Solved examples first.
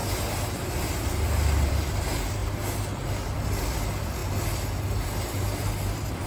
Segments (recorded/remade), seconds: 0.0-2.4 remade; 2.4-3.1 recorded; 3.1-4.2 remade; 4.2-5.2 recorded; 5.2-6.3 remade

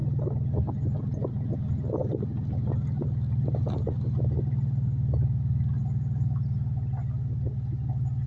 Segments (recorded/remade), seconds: 0.0-8.3 recorded